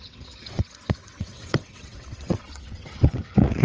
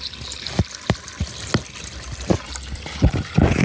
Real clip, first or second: second